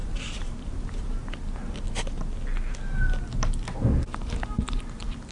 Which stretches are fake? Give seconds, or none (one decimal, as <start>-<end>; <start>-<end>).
0.0-1.2